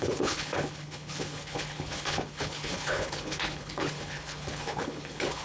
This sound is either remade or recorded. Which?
remade